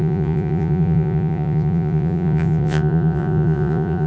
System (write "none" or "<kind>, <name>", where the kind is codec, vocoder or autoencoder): vocoder, Vocos